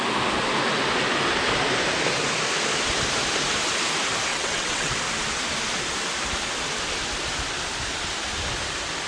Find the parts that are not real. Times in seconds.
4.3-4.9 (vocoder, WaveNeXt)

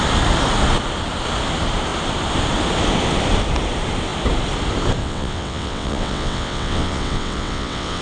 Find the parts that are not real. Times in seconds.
5.0-8.0 (vocoder, WaveNeXt)

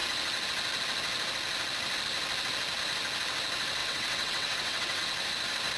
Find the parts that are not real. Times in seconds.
3.8-5.0 (vocoder, WaveNeXt)

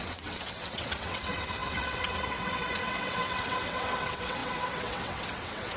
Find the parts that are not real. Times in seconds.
0.0-5.8 (vocoder, WaveNeXt)

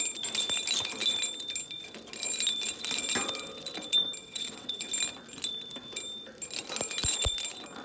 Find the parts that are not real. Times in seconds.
4.2-4.9 (vocoder, WaveNeXt)